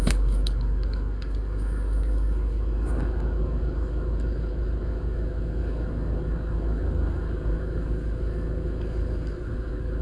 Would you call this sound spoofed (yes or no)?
yes